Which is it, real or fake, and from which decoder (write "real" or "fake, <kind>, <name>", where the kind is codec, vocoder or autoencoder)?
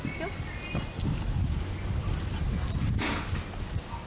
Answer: real